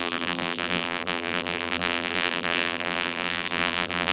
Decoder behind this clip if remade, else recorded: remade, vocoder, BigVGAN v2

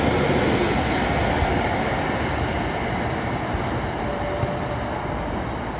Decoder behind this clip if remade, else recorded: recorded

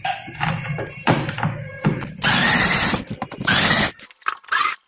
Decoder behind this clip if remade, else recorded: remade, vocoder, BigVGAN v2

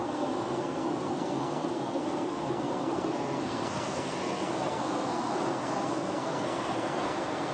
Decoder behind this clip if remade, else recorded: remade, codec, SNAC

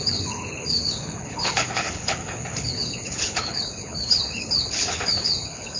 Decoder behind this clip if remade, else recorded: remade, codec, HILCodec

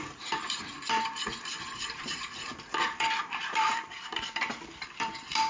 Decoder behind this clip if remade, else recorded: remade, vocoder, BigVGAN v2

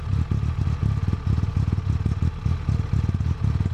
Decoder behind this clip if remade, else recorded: recorded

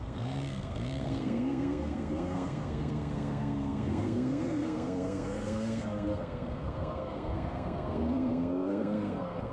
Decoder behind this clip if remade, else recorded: remade, codec, SNAC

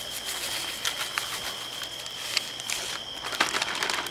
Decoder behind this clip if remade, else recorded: recorded